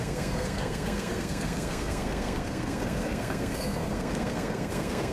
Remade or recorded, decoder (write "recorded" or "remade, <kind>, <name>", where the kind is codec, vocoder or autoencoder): remade, codec, SNAC